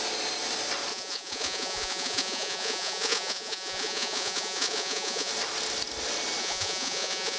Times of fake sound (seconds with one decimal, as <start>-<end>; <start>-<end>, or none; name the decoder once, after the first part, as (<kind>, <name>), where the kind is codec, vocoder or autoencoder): 0.9-5.3 (vocoder, Vocos); 6.4-7.4